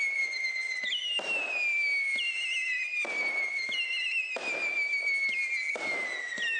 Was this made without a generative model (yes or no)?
yes